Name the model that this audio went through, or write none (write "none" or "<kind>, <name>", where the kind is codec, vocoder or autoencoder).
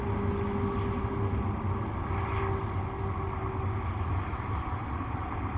none